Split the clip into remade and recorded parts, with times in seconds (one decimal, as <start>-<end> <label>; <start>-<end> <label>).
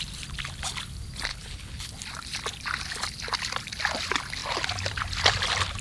0.0-1.3 recorded; 1.3-1.9 remade; 1.9-5.8 recorded